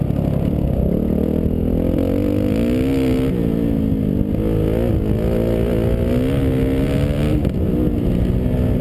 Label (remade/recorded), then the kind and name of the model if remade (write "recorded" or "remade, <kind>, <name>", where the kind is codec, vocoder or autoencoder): recorded